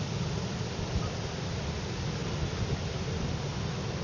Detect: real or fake real